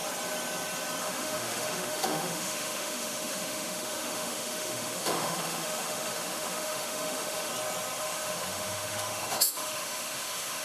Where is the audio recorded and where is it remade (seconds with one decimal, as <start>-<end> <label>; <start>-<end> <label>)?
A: 0.0-1.0 recorded; 1.0-7.5 remade; 7.5-8.0 recorded; 8.0-10.6 remade